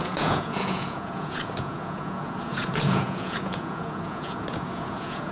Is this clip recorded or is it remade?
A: remade